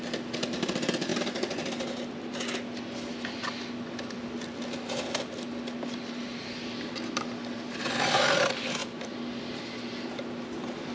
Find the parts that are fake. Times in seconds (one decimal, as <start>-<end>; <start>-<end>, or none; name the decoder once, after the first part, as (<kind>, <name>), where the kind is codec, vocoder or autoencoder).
none